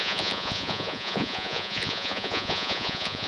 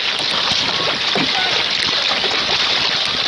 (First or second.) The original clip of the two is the second